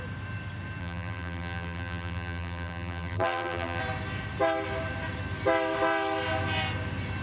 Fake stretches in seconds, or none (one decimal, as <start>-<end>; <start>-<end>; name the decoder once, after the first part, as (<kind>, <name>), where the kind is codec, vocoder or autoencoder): 0.8-3.8 (vocoder, BigVGAN v2)